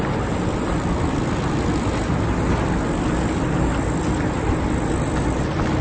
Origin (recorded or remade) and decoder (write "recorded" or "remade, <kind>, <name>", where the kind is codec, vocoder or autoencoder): recorded